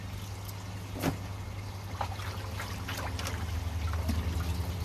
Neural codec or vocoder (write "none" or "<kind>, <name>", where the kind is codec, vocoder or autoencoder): none